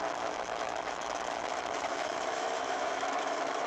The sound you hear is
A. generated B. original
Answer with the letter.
A